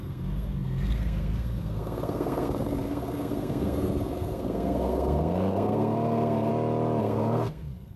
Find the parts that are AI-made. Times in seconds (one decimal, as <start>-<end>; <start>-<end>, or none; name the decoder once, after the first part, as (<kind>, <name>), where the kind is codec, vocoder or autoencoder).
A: 0.0-6.5 (codec, SNAC); 7.0-8.0